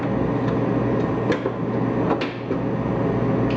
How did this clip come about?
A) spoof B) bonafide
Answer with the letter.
B